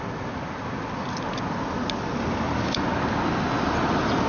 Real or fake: real